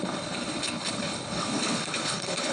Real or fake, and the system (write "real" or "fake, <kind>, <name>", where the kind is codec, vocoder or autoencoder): fake, codec, HILCodec